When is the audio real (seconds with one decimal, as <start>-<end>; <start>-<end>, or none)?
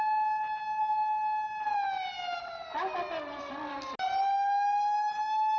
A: 0.0-5.6